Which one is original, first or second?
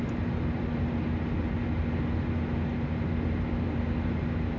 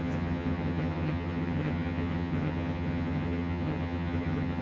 first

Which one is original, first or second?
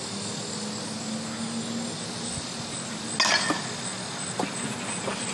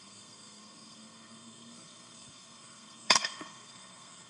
first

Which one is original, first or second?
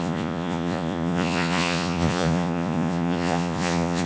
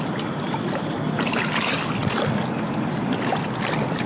second